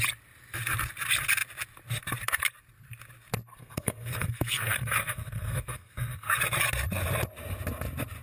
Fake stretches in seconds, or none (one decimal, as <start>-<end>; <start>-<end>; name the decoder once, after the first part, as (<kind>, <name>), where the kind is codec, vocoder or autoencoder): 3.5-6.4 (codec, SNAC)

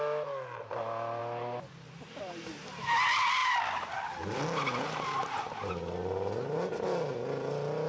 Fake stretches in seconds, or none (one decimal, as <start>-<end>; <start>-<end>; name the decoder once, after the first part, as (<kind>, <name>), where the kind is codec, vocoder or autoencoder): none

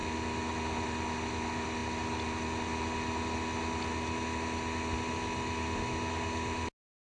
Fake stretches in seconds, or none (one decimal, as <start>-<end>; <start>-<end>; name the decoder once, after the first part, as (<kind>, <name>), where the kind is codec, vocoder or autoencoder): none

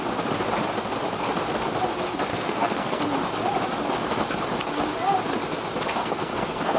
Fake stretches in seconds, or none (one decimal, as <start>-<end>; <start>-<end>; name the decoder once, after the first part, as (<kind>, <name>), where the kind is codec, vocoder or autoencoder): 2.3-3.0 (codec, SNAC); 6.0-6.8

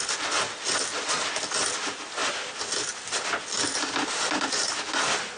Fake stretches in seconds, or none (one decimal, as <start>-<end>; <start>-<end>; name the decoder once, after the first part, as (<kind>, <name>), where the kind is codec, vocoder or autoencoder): none

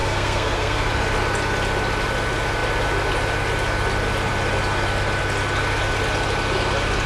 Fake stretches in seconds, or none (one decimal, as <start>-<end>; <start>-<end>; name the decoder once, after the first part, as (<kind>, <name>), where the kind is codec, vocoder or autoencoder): 0.0-0.9 (codec, SNAC)

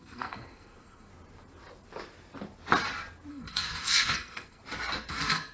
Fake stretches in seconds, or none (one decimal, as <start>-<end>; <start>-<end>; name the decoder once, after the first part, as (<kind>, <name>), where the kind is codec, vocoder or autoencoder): 0.0-1.1 (codec, SNAC); 3.3-4.6; 5.1-5.5

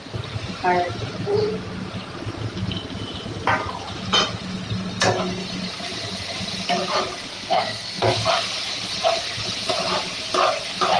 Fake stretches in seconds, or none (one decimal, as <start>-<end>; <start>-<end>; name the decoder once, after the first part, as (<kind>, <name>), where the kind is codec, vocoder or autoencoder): 7.3-8.1 (codec, SNAC)